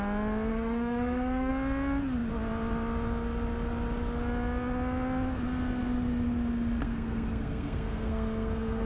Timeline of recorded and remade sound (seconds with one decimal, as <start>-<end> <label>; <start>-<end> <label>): 0.0-0.5 recorded; 0.5-1.5 remade; 1.5-6.8 recorded; 6.8-8.9 remade